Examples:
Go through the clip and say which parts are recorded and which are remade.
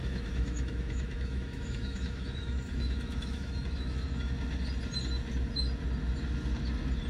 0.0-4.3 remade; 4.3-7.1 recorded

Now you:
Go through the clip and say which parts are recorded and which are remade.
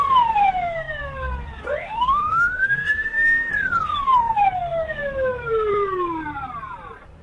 0.0-1.8 recorded; 1.8-3.5 remade; 3.5-7.2 recorded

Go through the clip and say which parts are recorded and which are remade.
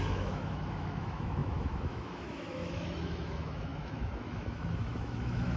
0.0-5.6 remade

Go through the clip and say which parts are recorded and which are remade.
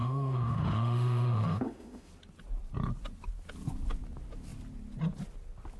0.0-2.1 remade; 2.1-5.8 recorded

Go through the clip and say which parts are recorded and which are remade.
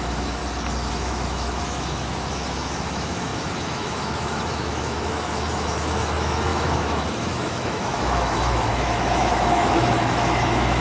0.0-0.4 remade; 0.4-0.9 recorded; 0.9-10.8 remade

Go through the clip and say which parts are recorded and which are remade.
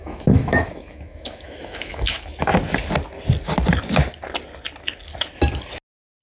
0.0-2.5 remade; 2.5-6.2 recorded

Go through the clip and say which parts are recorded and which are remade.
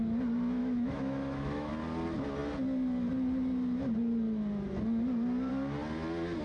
0.0-0.6 recorded; 0.6-1.7 remade; 1.7-6.4 recorded